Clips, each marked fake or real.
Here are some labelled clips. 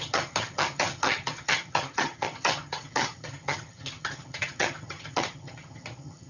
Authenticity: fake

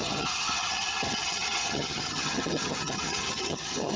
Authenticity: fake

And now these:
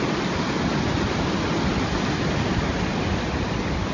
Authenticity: real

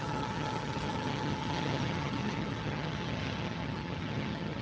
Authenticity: fake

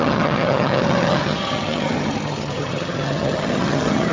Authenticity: fake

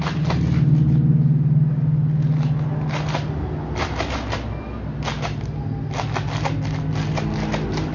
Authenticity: real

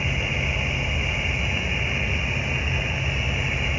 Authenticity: real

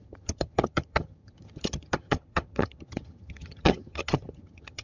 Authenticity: fake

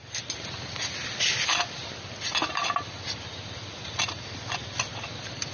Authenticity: real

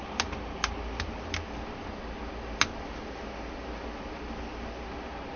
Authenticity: real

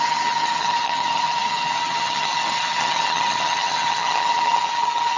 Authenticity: fake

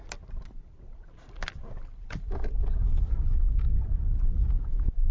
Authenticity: real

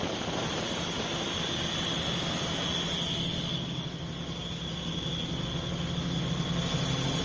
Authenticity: real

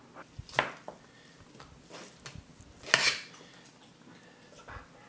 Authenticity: real